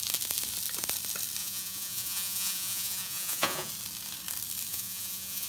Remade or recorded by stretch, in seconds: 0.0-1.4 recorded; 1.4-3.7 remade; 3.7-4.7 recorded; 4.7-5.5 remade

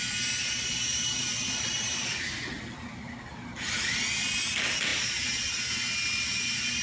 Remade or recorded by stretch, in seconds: 0.0-6.8 recorded

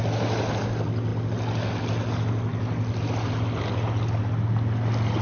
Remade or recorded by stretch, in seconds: 0.0-5.2 recorded

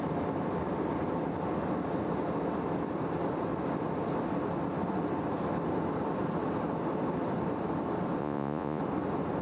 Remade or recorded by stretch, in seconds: 0.0-8.2 recorded; 8.2-8.8 remade; 8.8-9.4 recorded

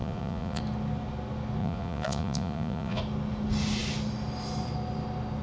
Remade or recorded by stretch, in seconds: 0.0-0.6 remade; 0.6-1.6 recorded; 1.6-3.0 remade; 3.0-5.4 recorded